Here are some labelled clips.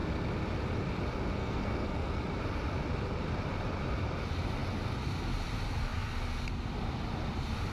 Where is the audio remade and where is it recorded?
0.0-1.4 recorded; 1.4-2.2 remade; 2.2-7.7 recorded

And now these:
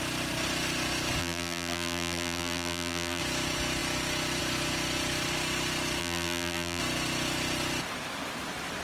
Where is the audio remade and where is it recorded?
0.0-1.2 recorded; 1.2-3.2 remade; 3.2-6.0 recorded; 6.0-6.8 remade; 6.8-8.8 recorded

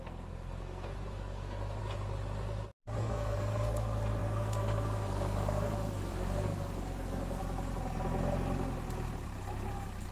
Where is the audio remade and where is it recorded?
0.0-1.8 remade; 1.8-3.0 recorded; 3.0-7.4 remade; 7.4-10.1 recorded

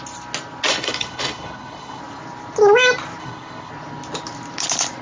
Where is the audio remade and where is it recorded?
0.0-0.7 recorded; 0.7-2.0 remade; 2.0-3.2 recorded; 3.2-3.7 remade; 3.7-5.0 recorded

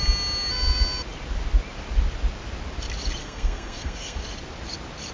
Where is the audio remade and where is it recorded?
0.0-3.2 recorded; 3.2-4.2 remade; 4.2-5.1 recorded

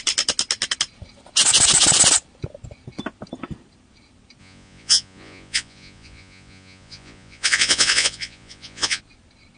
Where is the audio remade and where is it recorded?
0.0-4.4 recorded; 4.4-9.0 remade; 9.0-9.6 recorded

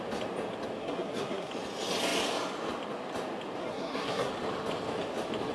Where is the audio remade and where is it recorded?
0.0-0.8 recorded; 0.8-1.5 remade; 1.5-3.6 recorded; 3.6-4.3 remade; 4.3-5.5 recorded

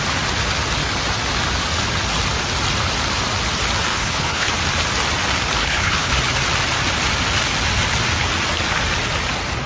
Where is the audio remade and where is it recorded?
0.0-3.9 recorded; 3.9-4.5 remade; 4.5-5.6 recorded; 5.6-6.1 remade; 6.1-9.7 recorded